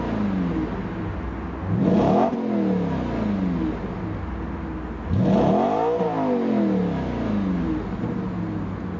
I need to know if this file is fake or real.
real